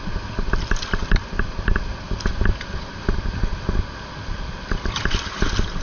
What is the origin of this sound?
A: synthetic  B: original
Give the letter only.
B